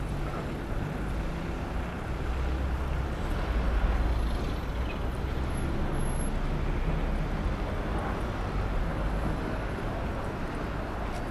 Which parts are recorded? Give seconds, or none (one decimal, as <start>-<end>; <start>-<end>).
0.0-8.9; 9.8-11.3